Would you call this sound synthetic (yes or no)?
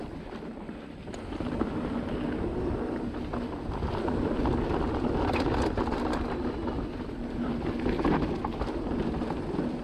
no